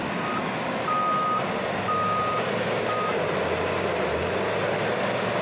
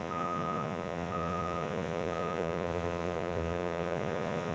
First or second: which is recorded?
first